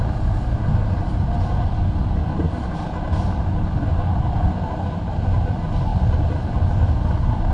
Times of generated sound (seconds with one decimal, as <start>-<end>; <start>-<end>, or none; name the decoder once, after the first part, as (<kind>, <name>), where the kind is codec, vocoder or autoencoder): none